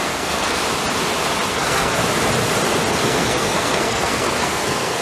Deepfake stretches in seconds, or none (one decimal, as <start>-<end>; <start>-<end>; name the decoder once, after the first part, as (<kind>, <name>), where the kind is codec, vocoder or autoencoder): 0.0-0.6 (codec, SNAC); 1.5-2.0; 2.9-5.0